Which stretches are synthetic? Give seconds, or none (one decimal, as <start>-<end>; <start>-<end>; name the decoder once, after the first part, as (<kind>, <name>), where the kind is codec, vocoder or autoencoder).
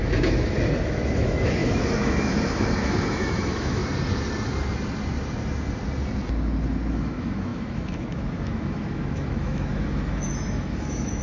0.0-3.8 (autoencoder, DAC-VAE); 6.9-11.2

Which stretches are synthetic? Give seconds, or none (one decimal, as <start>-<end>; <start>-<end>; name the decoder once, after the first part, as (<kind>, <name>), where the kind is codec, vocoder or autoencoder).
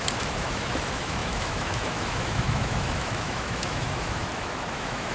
0.0-5.1 (autoencoder, DAC-VAE)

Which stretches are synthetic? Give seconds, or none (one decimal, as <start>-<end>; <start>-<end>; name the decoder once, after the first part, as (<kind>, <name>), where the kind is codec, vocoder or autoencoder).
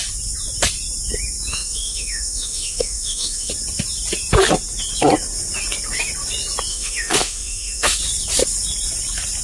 1.5-3.5 (autoencoder, DAC-VAE); 6.7-8.0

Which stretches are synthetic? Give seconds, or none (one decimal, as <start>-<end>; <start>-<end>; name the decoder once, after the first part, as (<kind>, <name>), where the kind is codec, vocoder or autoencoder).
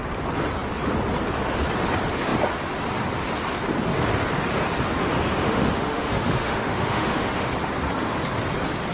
5.4-7.5 (autoencoder, DAC-VAE)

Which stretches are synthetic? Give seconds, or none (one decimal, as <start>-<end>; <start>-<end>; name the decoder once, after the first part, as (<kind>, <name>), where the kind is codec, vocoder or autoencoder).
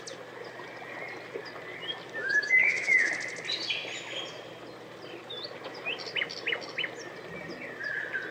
2.2-3.1 (autoencoder, DAC-VAE)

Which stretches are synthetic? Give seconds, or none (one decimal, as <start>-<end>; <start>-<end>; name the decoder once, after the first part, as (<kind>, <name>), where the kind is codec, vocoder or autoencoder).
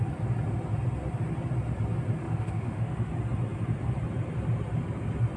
2.2-3.1 (autoencoder, DAC-VAE)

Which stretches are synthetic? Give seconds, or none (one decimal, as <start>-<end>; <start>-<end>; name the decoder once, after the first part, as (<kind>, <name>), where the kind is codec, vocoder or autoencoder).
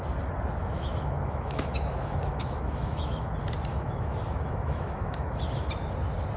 0.6-3.3 (autoencoder, DAC-VAE); 3.7-5.4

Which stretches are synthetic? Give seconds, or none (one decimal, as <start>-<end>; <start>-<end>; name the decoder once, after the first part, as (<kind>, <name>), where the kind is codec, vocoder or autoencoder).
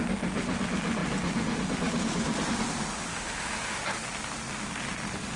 3.1-3.8 (autoencoder, DAC-VAE)